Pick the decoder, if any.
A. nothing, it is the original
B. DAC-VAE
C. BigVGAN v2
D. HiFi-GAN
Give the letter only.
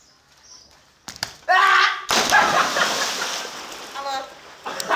A